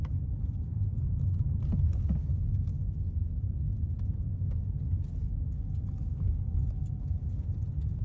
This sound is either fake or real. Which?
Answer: real